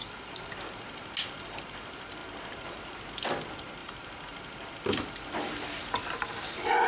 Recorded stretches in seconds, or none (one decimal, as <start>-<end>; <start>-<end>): 0.0-6.9